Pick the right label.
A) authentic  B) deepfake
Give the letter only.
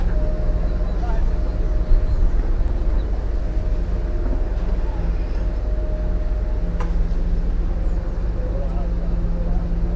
A